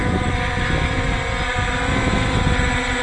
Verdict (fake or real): real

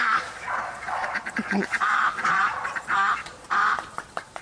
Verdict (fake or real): fake